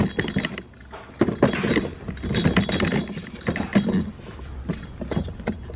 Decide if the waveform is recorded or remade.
recorded